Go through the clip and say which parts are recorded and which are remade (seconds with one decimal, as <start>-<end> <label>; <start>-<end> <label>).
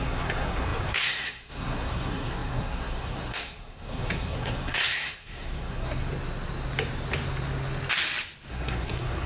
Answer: 0.0-6.0 remade; 6.0-8.5 recorded; 8.5-9.3 remade